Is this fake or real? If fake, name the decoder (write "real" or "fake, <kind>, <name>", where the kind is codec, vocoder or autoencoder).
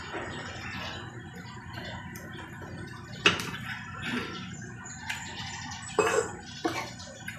real